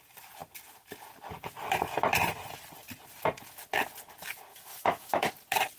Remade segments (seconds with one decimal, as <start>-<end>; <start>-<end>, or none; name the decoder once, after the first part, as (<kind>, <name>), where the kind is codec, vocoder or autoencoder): 4.5-5.3 (autoencoder, DAC-VAE)